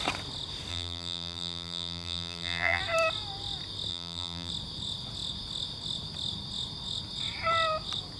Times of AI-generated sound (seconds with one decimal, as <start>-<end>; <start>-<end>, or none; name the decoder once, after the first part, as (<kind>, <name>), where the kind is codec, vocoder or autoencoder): 0.7-2.8 (vocoder, BigVGAN v2); 3.9-4.5